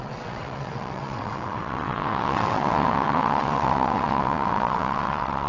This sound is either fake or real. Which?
fake